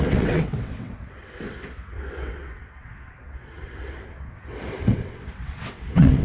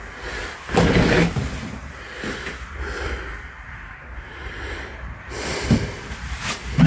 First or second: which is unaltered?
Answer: second